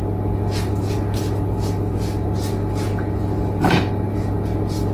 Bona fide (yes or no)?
yes